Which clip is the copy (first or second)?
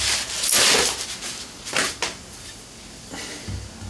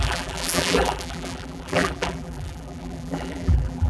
second